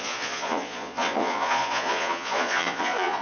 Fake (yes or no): yes